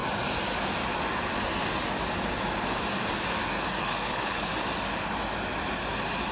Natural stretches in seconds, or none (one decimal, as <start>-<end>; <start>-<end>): 0.0-3.8; 4.5-6.3